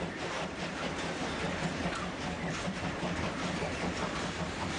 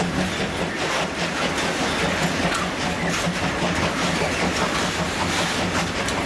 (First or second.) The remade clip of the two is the first